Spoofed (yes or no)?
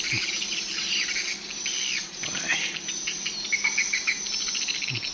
no